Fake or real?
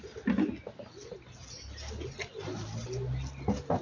real